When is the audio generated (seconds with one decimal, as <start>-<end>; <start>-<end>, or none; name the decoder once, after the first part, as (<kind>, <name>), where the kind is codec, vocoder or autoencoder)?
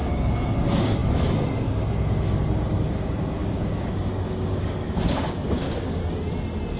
0.0-6.0 (codec, DAC)